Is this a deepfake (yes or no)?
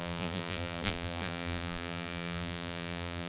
yes